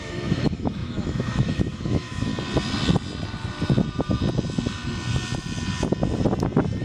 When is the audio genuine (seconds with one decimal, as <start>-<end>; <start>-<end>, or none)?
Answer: 2.3-6.8